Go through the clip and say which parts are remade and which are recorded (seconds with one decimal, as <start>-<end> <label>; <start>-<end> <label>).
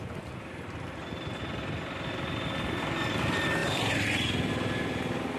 0.0-5.4 recorded